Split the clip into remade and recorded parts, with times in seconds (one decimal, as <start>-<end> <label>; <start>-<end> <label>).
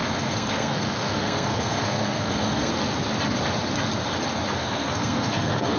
0.0-2.7 remade; 2.7-4.5 recorded; 4.5-5.8 remade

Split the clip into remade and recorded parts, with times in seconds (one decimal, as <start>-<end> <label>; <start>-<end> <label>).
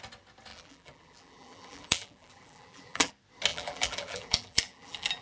0.0-0.5 recorded; 0.5-3.1 remade; 3.1-3.5 recorded; 3.5-5.2 remade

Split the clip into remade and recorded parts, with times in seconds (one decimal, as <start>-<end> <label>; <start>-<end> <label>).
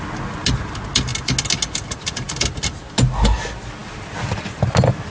0.0-5.1 recorded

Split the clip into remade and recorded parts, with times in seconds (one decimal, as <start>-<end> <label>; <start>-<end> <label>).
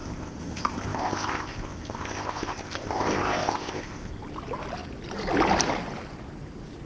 0.0-4.1 remade; 4.1-6.9 recorded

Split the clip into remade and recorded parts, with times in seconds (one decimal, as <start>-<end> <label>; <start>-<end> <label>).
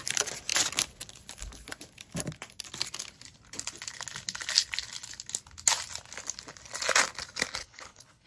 0.0-7.6 recorded; 7.6-8.3 remade